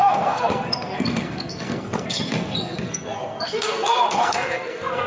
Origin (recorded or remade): remade